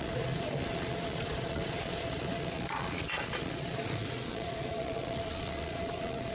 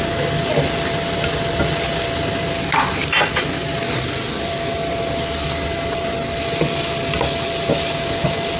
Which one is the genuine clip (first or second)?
second